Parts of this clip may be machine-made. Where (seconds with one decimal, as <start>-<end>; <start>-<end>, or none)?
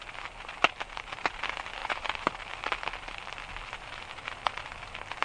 1.8-2.3